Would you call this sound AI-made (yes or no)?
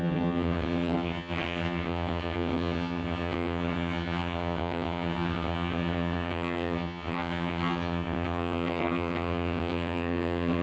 yes